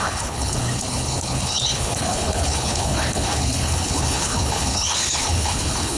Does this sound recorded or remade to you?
remade